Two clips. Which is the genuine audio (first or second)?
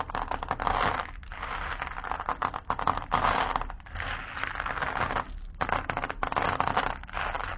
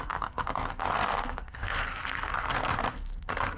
first